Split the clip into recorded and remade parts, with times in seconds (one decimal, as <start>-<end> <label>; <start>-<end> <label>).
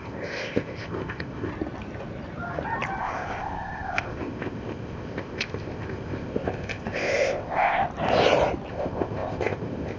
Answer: 0.0-1.5 remade; 1.5-3.0 recorded; 3.0-7.8 remade; 7.8-8.7 recorded; 8.7-10.0 remade